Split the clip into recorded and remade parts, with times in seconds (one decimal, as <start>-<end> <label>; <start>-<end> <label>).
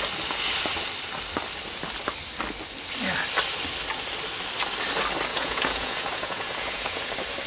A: 0.0-5.3 recorded; 5.3-7.1 remade; 7.1-7.5 recorded